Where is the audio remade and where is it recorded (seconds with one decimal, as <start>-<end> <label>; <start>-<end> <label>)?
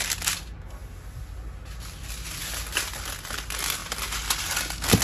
0.0-5.0 recorded